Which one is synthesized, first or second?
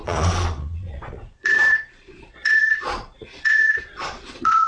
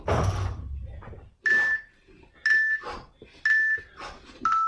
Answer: first